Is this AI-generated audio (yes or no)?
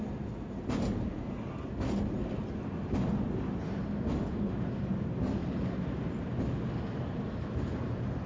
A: no